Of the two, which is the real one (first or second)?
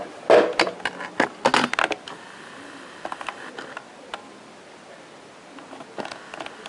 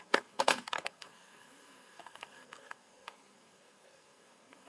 first